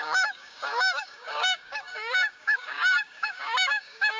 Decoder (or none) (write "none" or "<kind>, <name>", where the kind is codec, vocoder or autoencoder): codec, DAC